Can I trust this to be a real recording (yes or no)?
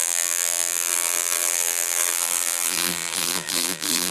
no